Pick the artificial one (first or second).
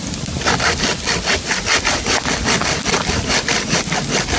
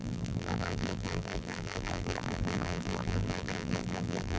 second